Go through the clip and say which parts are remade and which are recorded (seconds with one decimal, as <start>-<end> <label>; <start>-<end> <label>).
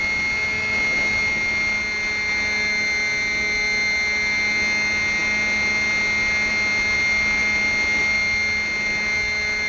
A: 0.0-9.7 recorded